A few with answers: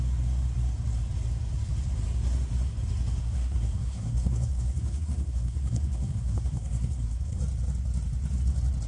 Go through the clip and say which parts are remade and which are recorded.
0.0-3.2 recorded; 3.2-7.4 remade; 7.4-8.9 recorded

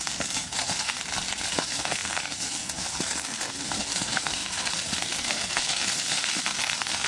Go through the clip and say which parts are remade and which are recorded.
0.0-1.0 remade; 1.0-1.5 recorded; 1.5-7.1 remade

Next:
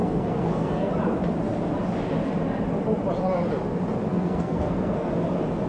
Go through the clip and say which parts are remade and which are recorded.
0.0-0.9 remade; 0.9-4.1 recorded; 4.1-5.1 remade; 5.1-5.7 recorded

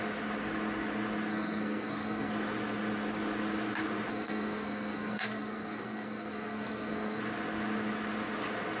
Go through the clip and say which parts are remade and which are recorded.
0.0-1.3 recorded; 1.3-2.3 remade; 2.3-4.1 recorded; 4.1-7.2 remade; 7.2-8.8 recorded

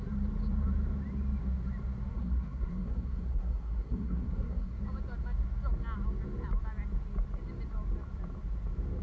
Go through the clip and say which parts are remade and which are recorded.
0.0-2.1 recorded; 2.1-4.8 remade; 4.8-9.0 recorded

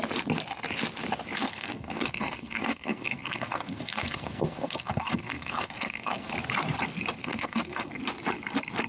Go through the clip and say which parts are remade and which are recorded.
0.0-1.4 recorded; 1.4-6.3 remade; 6.3-7.2 recorded; 7.2-7.9 remade; 7.9-8.9 recorded

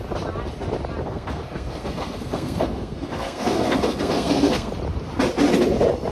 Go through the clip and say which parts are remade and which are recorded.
0.0-1.0 recorded; 1.0-4.7 remade; 4.7-6.1 recorded

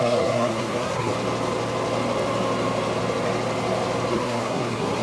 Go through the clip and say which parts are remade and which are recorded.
0.0-1.1 remade; 1.1-4.1 recorded; 4.1-5.0 remade